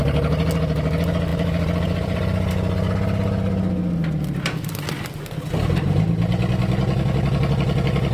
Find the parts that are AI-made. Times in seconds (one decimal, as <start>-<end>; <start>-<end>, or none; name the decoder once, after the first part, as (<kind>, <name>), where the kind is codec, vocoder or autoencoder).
1.3-2.5 (vocoder, BigVGAN v2)